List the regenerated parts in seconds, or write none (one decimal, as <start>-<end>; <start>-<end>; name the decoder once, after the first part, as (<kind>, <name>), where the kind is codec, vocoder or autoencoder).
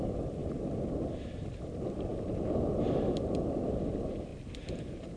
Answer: 0.0-4.3 (vocoder, BigVGAN v2)